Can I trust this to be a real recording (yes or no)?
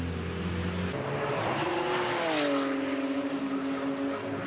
yes